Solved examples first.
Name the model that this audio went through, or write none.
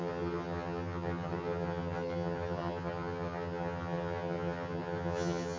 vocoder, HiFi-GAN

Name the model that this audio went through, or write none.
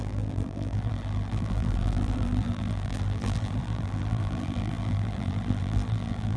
vocoder, BigVGAN v2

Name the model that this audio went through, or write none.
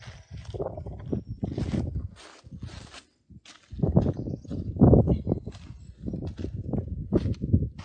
none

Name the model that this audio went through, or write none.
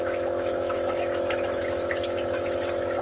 autoencoder, DAC-VAE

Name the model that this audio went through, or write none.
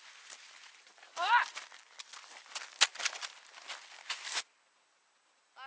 none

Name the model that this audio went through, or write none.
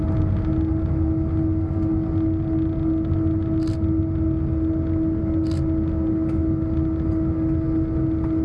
none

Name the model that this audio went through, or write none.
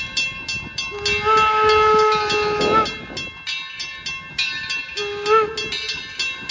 none